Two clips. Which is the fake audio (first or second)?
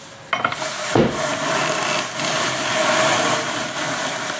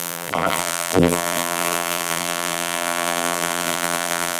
second